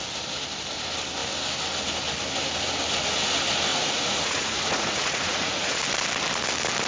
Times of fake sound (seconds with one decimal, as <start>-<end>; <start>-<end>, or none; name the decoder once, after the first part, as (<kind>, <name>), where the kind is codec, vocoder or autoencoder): 3.7-5.8 (vocoder, Vocos)